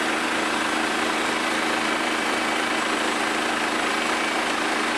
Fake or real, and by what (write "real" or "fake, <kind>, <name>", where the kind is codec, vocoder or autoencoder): real